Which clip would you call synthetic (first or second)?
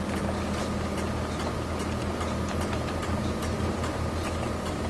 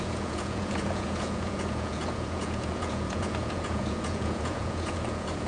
second